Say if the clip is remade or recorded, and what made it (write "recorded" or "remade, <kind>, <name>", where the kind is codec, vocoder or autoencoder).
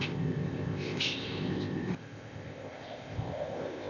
remade, codec, ZipCodec